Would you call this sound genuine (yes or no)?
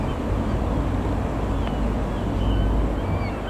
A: yes